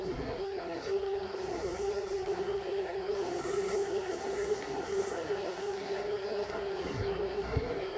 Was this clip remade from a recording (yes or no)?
yes